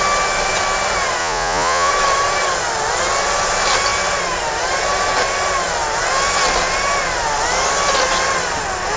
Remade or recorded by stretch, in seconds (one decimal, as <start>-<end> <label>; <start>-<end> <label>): 0.0-1.2 recorded; 1.2-1.9 remade; 1.9-9.0 recorded